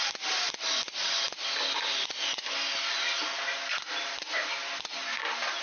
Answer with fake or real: real